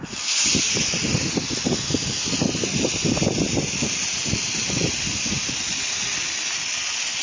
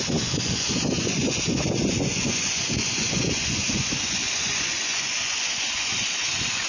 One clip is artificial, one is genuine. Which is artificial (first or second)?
second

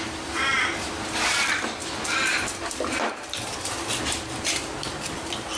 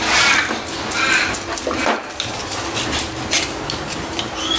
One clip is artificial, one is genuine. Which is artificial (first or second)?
first